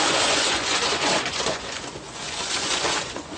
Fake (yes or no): yes